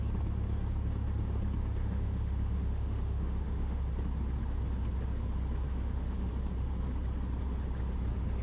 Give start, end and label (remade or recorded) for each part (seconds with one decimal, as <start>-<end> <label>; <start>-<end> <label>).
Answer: 0.0-1.8 recorded; 1.8-3.8 remade; 3.8-5.7 recorded; 5.7-6.3 remade; 6.3-8.4 recorded